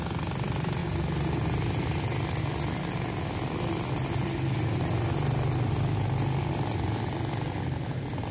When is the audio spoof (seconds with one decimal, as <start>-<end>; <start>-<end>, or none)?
none